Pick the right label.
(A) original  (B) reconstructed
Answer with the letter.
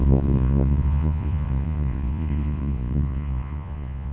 B